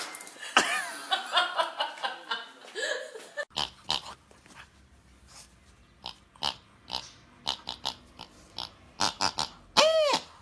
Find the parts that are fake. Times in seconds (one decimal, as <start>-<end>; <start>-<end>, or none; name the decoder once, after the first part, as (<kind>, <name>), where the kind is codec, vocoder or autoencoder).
none